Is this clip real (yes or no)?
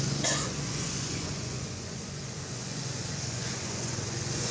no